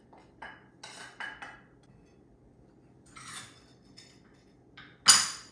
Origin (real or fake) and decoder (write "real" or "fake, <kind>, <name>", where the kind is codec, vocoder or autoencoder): real